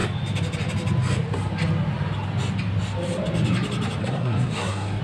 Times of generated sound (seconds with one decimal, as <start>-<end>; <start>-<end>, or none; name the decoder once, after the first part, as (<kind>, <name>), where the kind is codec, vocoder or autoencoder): 4.0-5.0 (codec, SNAC)